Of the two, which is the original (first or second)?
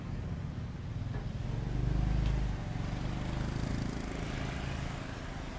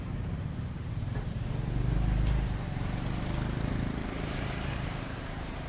first